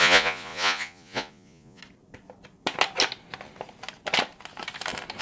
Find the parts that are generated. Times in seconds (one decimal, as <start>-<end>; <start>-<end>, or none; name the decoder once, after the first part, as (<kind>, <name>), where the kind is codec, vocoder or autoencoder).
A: 0.0-1.8 (vocoder, Vocos)